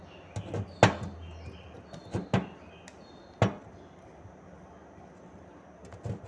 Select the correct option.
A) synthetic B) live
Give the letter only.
B